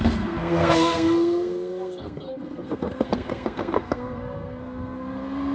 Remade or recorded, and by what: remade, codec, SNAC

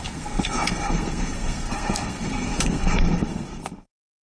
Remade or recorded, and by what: remade, codec, SNAC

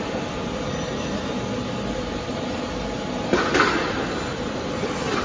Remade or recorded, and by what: recorded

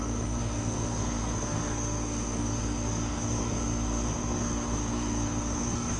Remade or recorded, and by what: remade, codec, SNAC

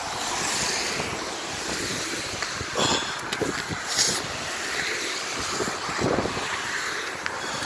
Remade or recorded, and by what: recorded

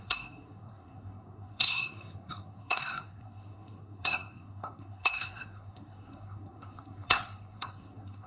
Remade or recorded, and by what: remade, codec, SNAC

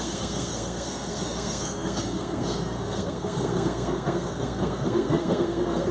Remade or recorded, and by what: remade, codec, SNAC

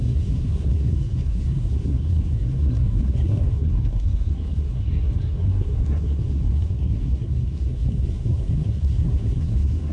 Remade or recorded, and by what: remade, codec, SNAC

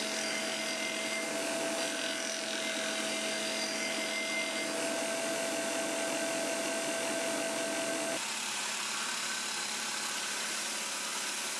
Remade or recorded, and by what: recorded